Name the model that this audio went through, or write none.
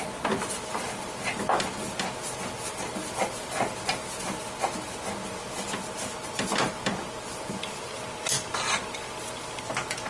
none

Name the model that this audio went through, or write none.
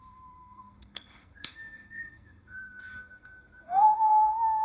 codec, SNAC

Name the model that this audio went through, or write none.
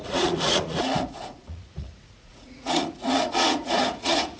vocoder, Vocos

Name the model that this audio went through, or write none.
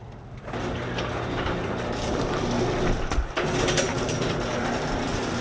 none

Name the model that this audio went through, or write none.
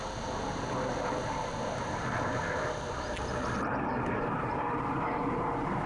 vocoder, BigVGAN v2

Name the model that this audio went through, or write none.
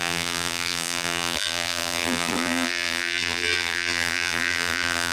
vocoder, BigVGAN v2